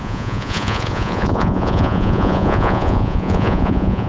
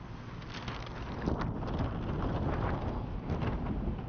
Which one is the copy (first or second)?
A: first